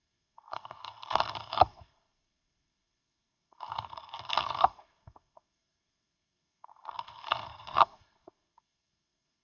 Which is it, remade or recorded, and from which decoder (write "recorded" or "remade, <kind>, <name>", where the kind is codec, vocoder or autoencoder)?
remade, codec, SNAC